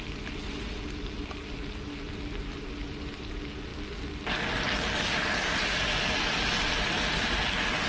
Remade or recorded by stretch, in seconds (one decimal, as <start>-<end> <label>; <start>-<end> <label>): 0.0-7.9 recorded